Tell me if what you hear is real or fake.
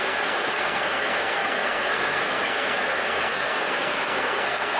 fake